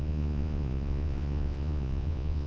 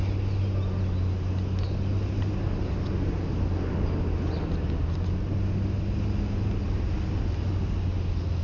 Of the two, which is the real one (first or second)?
second